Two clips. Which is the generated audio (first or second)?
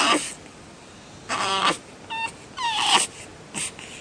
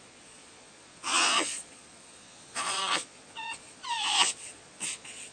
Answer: second